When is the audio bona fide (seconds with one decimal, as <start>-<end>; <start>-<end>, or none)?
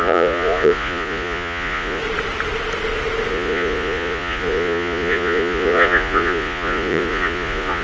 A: 2.0-3.3